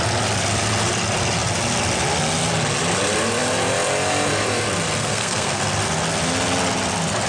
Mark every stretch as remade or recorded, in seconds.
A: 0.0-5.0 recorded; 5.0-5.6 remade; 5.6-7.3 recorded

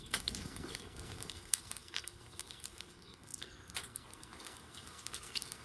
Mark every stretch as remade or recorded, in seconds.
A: 0.0-5.6 remade

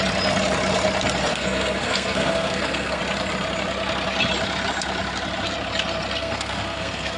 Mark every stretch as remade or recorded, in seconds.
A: 0.0-1.3 recorded; 1.3-3.0 remade; 3.0-6.2 recorded; 6.2-7.2 remade

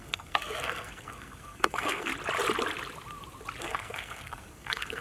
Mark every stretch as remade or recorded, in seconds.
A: 0.0-2.1 remade; 2.1-3.6 recorded; 3.6-5.0 remade